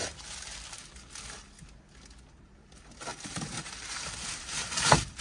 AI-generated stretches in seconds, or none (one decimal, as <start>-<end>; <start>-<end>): 0.0-0.8; 3.1-5.2